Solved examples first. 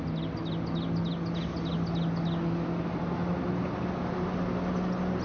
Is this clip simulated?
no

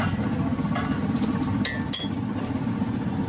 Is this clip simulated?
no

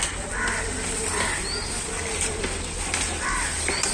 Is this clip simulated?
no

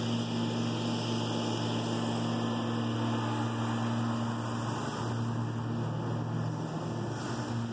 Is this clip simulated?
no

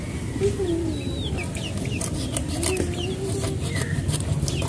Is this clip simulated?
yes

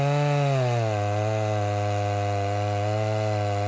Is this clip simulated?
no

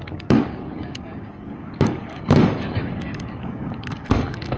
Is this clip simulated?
yes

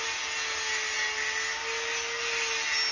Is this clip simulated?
no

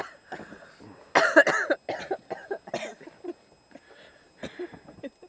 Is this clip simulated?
no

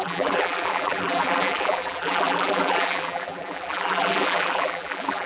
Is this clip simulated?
yes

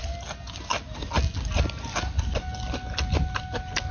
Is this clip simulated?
no